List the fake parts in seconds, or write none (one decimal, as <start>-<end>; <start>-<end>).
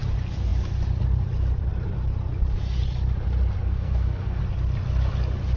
3.6-4.4